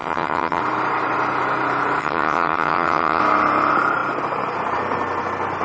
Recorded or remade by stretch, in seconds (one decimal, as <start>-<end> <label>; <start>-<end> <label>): 0.0-0.6 remade; 0.6-2.0 recorded; 2.0-3.2 remade; 3.2-5.6 recorded